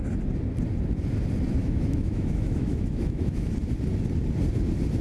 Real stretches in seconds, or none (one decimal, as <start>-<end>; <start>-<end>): 0.0-1.6; 3.5-5.0